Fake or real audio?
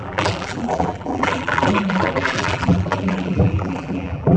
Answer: fake